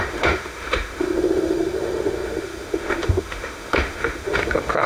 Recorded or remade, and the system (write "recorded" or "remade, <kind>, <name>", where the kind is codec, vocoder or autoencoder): remade, autoencoder, DAC-VAE